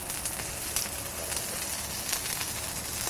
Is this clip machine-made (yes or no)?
no